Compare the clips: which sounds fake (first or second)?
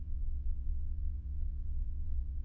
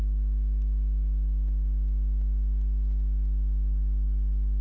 first